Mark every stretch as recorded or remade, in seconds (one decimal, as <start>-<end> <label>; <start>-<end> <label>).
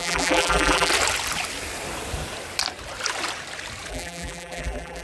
0.0-0.9 remade; 0.9-3.9 recorded; 3.9-5.0 remade